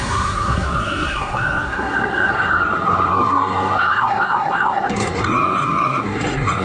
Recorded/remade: remade